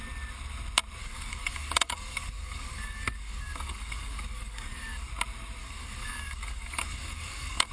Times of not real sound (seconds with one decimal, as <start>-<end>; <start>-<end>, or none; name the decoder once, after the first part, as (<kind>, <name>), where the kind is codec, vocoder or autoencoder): 1.0-5.1 (codec, DAC); 5.6-7.7